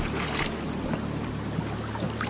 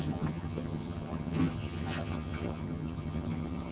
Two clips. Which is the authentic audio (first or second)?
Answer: first